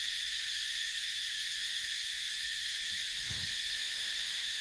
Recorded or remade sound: remade